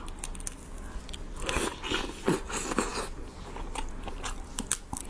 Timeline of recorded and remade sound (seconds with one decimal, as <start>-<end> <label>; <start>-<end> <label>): 0.0-5.1 recorded

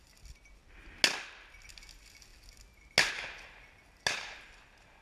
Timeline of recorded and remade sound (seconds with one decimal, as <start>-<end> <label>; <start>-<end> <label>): 0.0-5.0 recorded

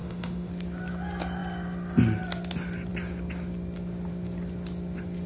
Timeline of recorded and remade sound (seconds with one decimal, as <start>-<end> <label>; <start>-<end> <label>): 0.0-0.5 remade; 0.5-5.3 recorded

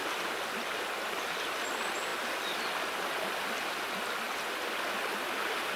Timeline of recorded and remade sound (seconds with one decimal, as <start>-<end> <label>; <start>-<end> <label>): 0.0-5.8 recorded

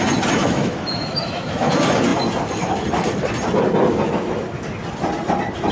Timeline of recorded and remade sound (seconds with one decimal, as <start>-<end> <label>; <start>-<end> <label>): 0.0-0.4 recorded; 0.4-1.7 remade; 1.7-5.7 recorded

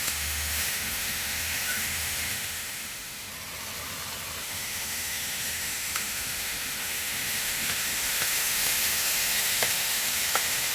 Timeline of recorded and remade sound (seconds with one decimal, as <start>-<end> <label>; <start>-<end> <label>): 0.0-3.3 remade; 3.3-4.4 recorded; 4.4-10.7 remade

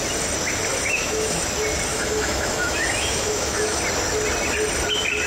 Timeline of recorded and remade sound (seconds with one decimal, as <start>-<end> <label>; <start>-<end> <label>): 0.0-0.7 recorded; 0.7-1.4 remade; 1.4-1.9 recorded; 1.9-3.8 remade; 3.8-5.3 recorded

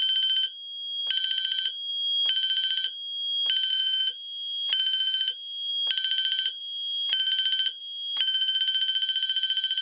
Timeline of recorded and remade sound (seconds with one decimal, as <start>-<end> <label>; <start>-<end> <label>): 0.0-3.7 recorded; 3.7-5.7 remade; 5.7-6.6 recorded; 6.6-7.3 remade; 7.3-7.8 recorded; 7.8-8.6 remade; 8.6-9.8 recorded